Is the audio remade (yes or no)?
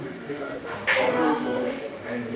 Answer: yes